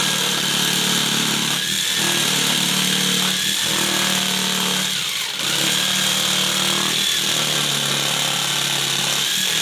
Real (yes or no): yes